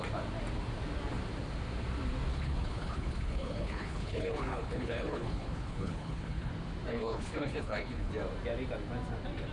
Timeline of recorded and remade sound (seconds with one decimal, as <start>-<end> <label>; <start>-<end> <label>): 0.0-2.3 recorded; 2.3-6.5 remade; 6.5-6.9 recorded; 6.9-8.1 remade; 8.1-9.5 recorded